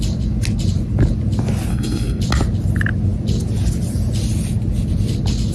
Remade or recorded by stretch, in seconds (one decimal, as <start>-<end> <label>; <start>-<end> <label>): 0.0-1.7 recorded; 1.7-2.2 remade; 2.2-5.5 recorded